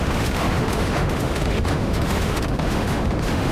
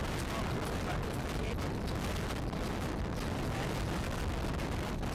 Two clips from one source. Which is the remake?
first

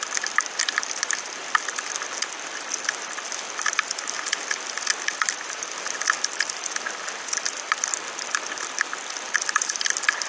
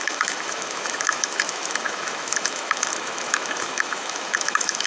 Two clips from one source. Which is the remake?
second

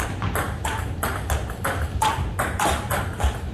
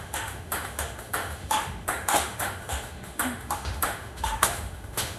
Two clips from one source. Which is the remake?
second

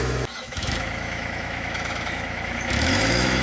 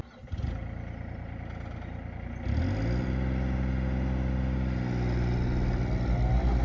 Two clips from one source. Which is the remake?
first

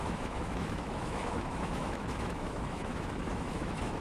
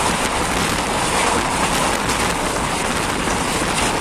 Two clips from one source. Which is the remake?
first